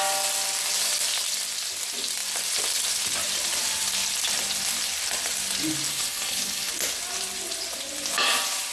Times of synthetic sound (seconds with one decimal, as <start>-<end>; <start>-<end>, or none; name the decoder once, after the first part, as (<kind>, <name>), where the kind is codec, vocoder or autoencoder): 5.9-6.7 (codec, HILCodec)